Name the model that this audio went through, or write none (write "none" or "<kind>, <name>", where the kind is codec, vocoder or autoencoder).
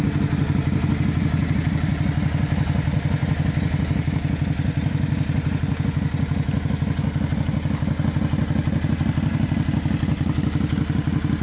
none